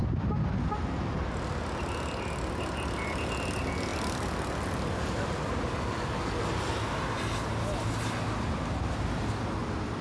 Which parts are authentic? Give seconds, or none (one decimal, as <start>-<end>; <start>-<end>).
0.0-3.9; 5.8-10.0